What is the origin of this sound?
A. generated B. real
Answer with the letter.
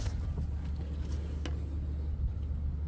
B